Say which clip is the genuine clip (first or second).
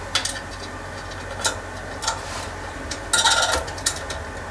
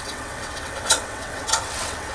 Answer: first